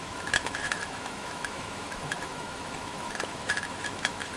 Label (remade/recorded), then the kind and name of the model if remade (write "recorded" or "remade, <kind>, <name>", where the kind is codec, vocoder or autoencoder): remade, autoencoder, DAC-VAE